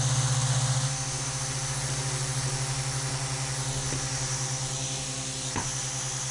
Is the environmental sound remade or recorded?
recorded